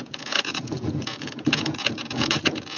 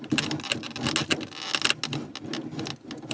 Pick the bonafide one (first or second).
second